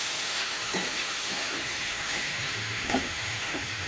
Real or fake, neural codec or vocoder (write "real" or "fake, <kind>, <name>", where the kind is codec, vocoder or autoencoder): fake, autoencoder, DAC-VAE